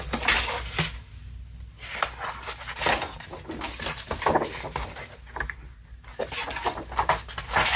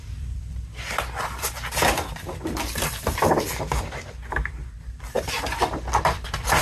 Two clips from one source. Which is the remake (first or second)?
second